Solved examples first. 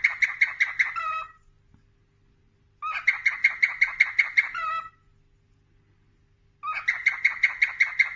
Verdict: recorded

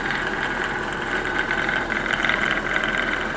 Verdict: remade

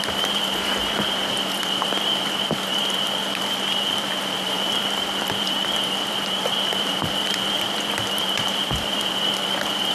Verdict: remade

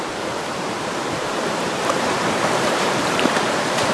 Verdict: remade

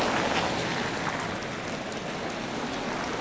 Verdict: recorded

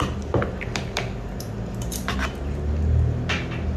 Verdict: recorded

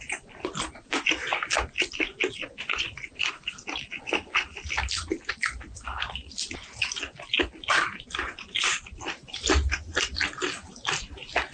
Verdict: recorded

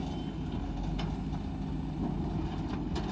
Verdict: recorded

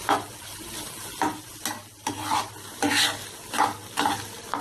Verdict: recorded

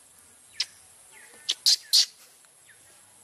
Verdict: recorded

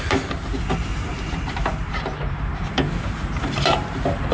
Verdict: remade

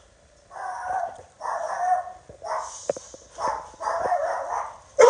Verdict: remade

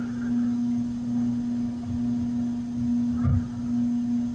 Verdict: recorded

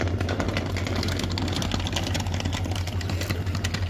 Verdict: recorded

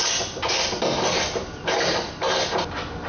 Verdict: recorded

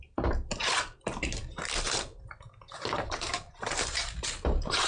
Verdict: remade